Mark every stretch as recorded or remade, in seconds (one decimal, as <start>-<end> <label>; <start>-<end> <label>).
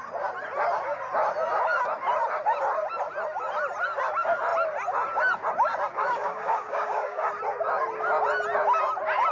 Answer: 0.0-5.9 recorded; 5.9-7.3 remade; 7.3-9.3 recorded